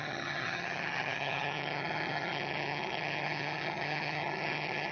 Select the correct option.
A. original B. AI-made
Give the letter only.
B